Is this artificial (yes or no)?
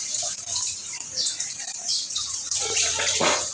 yes